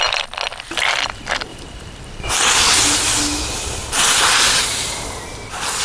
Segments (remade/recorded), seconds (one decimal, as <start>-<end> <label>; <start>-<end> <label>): 0.0-1.5 recorded; 1.5-2.3 remade; 2.3-3.8 recorded; 3.8-5.8 remade